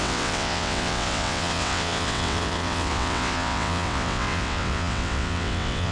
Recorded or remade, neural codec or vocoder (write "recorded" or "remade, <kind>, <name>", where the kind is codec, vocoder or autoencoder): remade, vocoder, WaveNeXt